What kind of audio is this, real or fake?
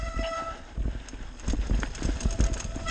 real